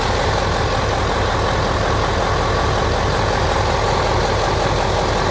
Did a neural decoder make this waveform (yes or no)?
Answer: no